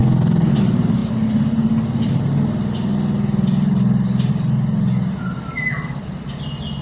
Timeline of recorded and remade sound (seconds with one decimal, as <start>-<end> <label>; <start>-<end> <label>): 0.0-6.8 recorded